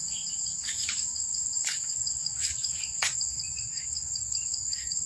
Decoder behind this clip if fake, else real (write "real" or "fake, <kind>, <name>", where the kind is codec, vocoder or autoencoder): fake, codec, DAC